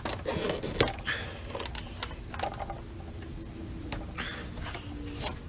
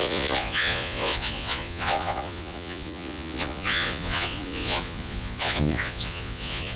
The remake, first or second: second